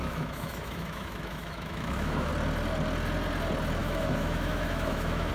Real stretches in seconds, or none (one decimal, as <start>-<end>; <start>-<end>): 2.3-3.8